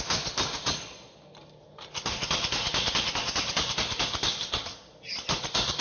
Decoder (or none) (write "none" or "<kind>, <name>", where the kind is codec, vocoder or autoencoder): none